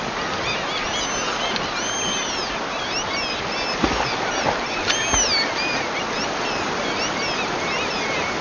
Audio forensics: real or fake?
real